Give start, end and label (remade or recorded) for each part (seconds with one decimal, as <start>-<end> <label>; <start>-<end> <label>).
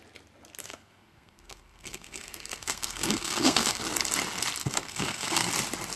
0.0-0.6 recorded; 0.6-3.8 remade; 3.8-4.6 recorded; 4.6-5.5 remade; 5.5-6.0 recorded